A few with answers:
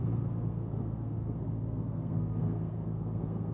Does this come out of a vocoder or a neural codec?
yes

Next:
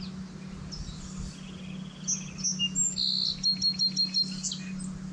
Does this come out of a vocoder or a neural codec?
no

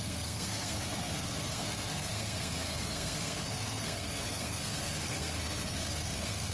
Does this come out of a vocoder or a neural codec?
yes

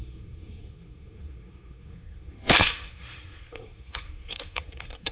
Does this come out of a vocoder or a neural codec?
yes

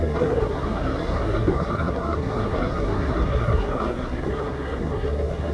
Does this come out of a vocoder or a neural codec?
yes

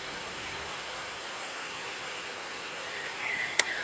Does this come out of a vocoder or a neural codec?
yes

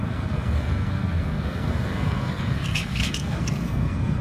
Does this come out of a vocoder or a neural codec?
yes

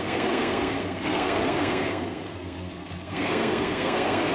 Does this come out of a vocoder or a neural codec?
yes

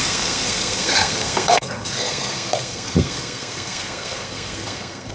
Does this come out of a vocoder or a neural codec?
yes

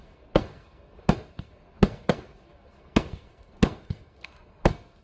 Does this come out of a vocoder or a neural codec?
yes